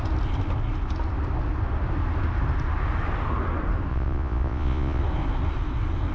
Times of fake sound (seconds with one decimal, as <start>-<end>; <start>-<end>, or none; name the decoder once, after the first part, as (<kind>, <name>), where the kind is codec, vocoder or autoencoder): 3.9-5.0 (vocoder, Vocos)